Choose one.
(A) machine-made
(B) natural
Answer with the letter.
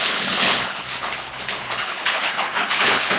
A